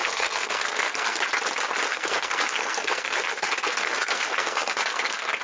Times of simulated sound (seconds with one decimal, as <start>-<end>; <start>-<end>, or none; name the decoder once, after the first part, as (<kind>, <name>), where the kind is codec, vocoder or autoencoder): 0.0-1.2 (codec, SNAC); 1.9-5.4